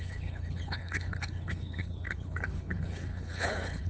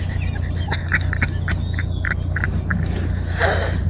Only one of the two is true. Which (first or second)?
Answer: second